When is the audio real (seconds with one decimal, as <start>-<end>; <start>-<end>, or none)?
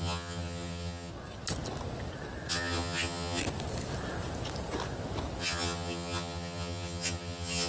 1.1-2.5; 3.4-5.4